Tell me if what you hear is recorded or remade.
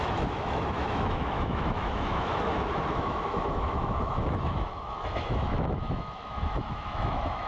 remade